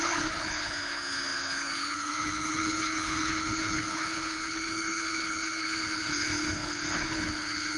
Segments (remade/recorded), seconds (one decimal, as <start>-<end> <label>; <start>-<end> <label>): 0.0-7.8 remade